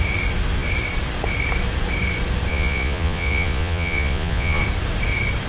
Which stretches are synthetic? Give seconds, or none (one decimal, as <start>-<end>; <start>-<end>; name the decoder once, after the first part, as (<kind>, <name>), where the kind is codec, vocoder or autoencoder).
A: 2.5-4.6 (vocoder, Vocos)